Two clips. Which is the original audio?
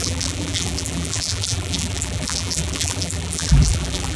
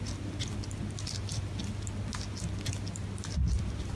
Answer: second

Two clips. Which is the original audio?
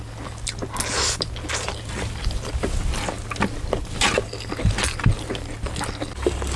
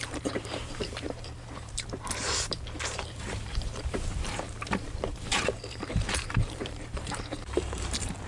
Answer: first